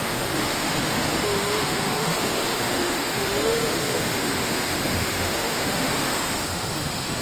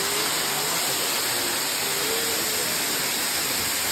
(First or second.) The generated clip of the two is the first